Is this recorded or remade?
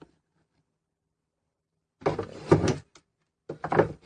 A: remade